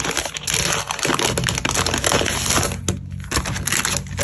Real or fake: real